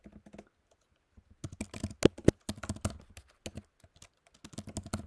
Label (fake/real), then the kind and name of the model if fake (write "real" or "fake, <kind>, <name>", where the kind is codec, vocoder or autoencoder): real